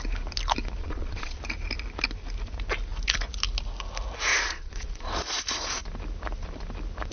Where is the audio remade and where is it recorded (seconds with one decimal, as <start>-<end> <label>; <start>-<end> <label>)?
0.0-0.8 recorded; 0.8-1.4 remade; 1.4-4.3 recorded; 4.3-5.1 remade; 5.1-7.1 recorded